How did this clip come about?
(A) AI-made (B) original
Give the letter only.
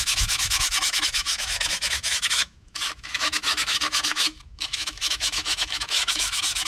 A